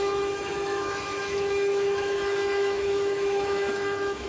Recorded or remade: remade